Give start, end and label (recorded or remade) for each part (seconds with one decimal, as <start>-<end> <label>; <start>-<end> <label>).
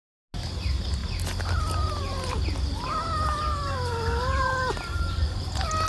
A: 0.0-4.9 recorded; 4.9-5.5 remade; 5.5-5.9 recorded